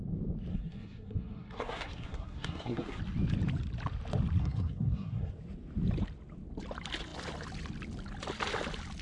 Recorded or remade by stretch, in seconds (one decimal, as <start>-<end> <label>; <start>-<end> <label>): 0.0-0.5 recorded; 0.5-3.0 remade; 3.0-4.4 recorded; 4.4-5.3 remade; 5.3-9.0 recorded